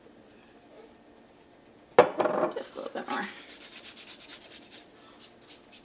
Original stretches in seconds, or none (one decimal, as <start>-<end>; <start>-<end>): 0.0-4.3; 4.9-5.8